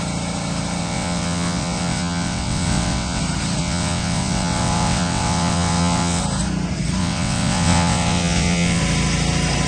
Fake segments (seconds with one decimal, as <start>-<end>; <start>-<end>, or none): 0.8-3.2; 3.6-6.2; 7.0-8.8

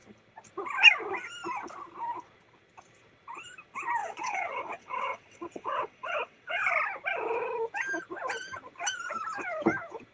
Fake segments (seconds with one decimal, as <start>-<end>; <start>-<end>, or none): 4.0-6.6

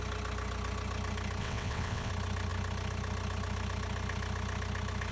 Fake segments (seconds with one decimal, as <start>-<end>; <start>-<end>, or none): 1.4-2.1

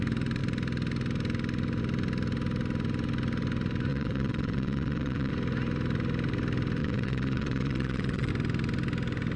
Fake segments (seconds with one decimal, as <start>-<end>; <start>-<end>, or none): 3.9-5.3; 6.8-8.3

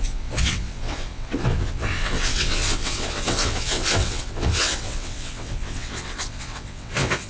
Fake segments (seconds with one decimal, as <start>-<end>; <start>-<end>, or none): 0.0-7.3

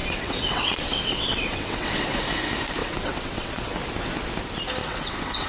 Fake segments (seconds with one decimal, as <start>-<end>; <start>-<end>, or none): 0.0-2.2; 2.8-3.7; 4.8-5.5

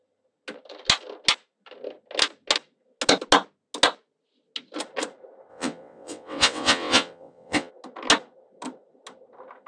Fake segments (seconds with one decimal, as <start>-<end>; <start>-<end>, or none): 5.5-7.7